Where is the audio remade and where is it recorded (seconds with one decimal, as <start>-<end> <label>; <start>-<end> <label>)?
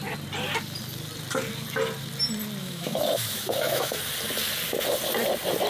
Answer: 0.0-2.6 recorded; 2.6-4.0 remade; 4.0-5.7 recorded